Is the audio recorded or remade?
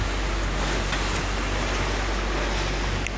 recorded